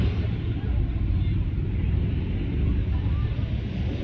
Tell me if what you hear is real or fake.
real